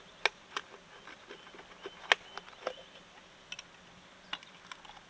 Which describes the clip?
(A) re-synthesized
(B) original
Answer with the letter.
B